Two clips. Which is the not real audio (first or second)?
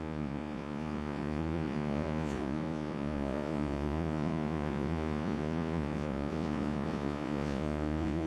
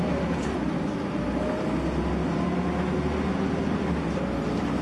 first